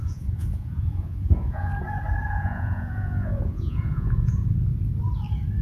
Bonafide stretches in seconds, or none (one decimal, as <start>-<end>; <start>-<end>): 1.7-2.3; 4.7-5.6